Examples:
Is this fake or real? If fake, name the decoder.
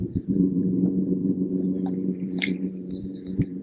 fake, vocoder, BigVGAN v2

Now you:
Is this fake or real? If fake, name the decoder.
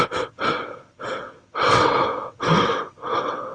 fake, vocoder, WaveNeXt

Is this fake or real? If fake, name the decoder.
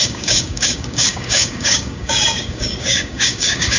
fake, codec, DAC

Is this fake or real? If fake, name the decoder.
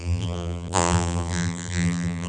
fake, vocoder, BigVGAN v2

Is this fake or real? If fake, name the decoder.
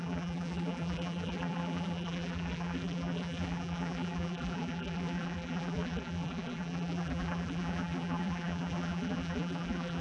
fake, vocoder, BigVGAN v2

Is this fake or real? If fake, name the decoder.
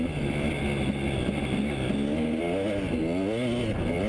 real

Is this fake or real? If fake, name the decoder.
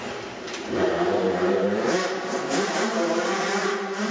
fake, vocoder, BigVGAN v2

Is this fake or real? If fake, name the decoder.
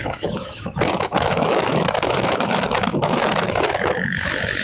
fake, autoencoder, DAC-VAE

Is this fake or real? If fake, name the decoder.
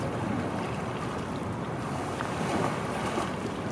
real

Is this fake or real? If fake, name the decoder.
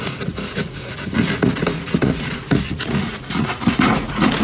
fake, vocoder, Vocos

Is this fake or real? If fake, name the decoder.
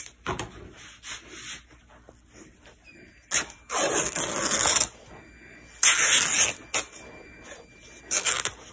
real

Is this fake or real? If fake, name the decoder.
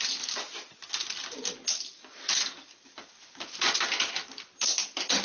real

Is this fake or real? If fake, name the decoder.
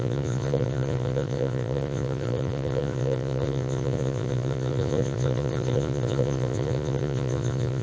fake, vocoder, Vocos